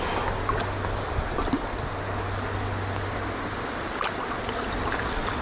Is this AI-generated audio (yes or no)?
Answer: no